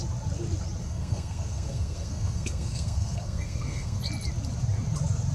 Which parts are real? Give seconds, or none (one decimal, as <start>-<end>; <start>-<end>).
0.0-0.8; 4.0-5.3